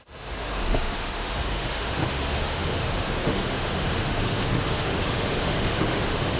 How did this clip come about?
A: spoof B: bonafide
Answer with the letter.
A